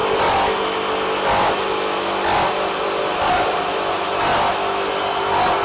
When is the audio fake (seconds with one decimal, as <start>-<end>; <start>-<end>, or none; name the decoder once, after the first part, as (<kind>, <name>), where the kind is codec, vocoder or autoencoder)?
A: none